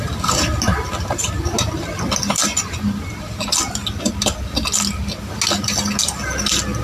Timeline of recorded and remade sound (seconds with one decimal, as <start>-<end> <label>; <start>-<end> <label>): 0.0-6.8 recorded